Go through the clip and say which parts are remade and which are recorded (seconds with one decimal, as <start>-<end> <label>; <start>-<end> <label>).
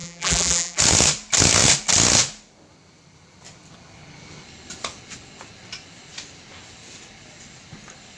0.0-0.8 remade; 0.8-8.2 recorded